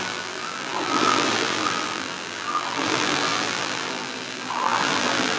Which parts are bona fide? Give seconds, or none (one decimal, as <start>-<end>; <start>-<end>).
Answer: none